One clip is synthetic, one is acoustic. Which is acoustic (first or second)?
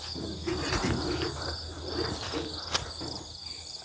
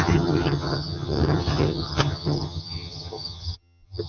first